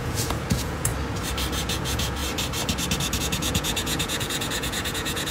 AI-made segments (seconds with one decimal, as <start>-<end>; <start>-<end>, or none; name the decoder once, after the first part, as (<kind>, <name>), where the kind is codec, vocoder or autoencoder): 0.0-0.9 (vocoder, Vocos); 1.5-2.2; 3.2-5.3